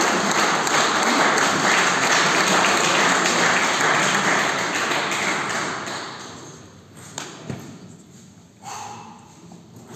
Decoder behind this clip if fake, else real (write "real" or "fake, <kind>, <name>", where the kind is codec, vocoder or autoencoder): real